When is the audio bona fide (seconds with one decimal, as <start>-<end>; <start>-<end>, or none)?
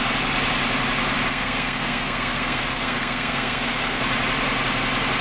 0.0-1.3; 4.0-5.2